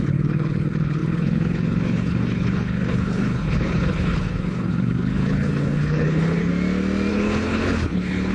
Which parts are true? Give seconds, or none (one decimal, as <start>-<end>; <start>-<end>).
6.5-7.1

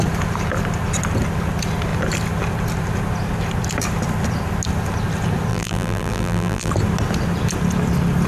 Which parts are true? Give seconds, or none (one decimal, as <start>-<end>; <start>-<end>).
0.0-5.5; 6.7-8.3

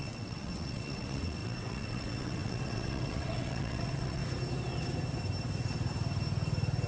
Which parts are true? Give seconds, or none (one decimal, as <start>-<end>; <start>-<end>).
4.2-6.9

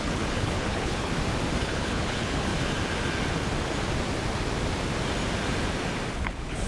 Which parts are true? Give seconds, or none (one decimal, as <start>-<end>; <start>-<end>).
1.1-1.6; 2.5-6.1

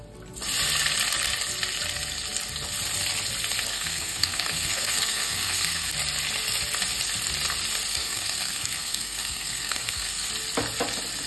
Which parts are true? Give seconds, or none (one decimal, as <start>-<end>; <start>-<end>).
0.0-3.7; 5.9-7.9; 10.3-11.3

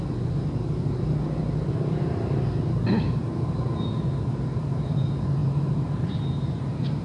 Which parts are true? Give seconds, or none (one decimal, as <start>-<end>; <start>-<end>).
0.0-7.0

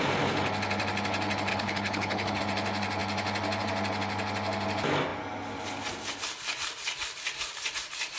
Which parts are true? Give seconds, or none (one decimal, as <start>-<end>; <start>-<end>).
0.0-1.5; 2.4-8.2